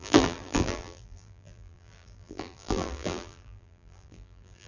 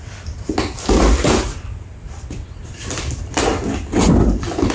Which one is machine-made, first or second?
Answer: first